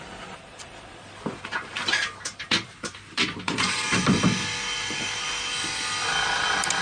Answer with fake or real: fake